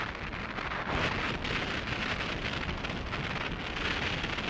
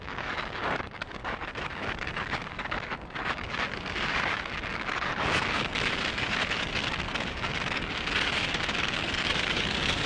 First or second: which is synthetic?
second